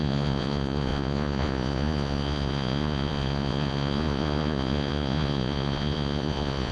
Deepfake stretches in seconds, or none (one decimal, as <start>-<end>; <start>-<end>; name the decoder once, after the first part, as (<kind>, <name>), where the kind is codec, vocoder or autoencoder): 0.0-6.7 (vocoder, Vocos)